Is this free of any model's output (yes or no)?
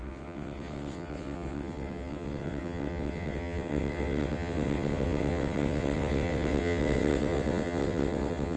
no